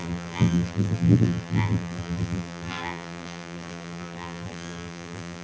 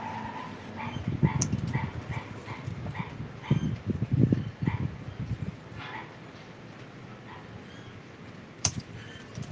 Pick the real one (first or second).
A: second